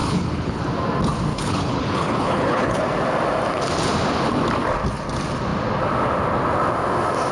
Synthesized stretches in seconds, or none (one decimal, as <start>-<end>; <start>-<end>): 0.0-0.6; 1.3-2.8